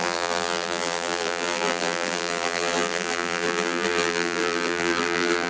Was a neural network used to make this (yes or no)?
yes